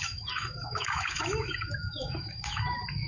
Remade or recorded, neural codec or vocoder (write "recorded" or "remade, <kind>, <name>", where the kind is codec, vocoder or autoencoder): remade, autoencoder, DAC-VAE